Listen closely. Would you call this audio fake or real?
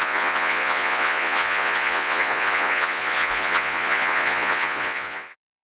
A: fake